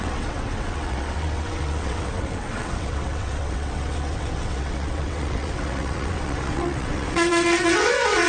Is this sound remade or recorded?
remade